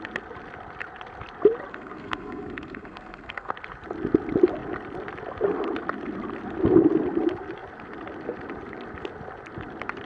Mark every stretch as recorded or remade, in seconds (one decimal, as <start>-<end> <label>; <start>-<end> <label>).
0.0-1.7 recorded; 1.7-3.5 remade; 3.5-10.1 recorded